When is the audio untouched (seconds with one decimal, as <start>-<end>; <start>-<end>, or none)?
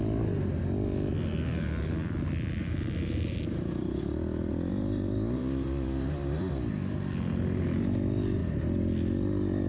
0.0-2.6; 4.0-4.7; 6.5-9.7